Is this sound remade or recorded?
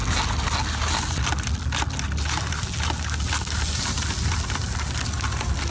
recorded